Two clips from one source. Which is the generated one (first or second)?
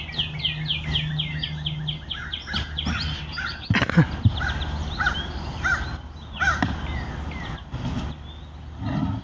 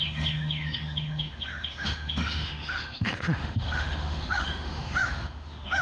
second